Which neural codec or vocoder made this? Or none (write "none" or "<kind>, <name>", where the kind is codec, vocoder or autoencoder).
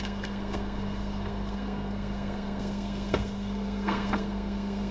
codec, SNAC